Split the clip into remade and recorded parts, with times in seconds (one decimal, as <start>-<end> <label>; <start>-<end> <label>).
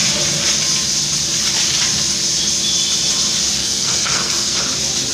0.0-3.6 recorded; 3.6-4.6 remade; 4.6-5.1 recorded